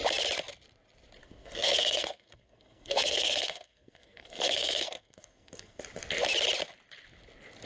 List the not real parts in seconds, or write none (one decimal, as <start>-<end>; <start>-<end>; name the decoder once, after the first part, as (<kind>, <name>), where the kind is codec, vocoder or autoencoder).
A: 1.2-5.8 (codec, SNAC)